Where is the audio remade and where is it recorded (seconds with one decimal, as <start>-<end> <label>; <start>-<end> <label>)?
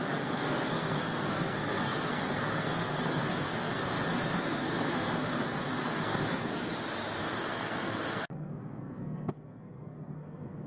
0.0-6.5 remade; 6.5-7.2 recorded; 7.2-10.7 remade